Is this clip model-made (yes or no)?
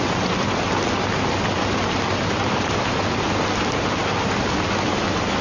no